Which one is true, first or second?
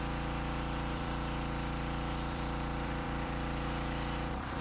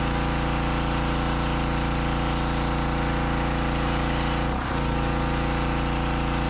second